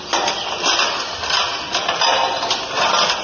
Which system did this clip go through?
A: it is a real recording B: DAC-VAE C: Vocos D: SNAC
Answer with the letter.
A